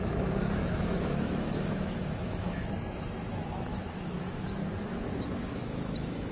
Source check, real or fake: fake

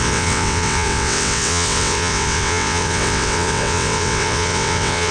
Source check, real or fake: fake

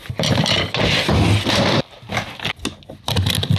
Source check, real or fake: real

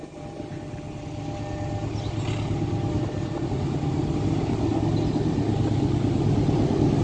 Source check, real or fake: real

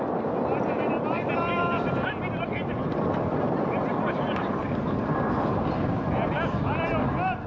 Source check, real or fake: real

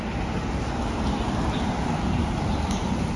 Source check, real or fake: real